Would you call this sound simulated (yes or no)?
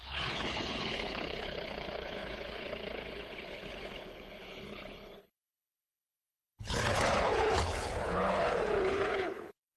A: yes